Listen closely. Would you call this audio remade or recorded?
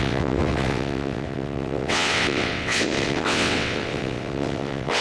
remade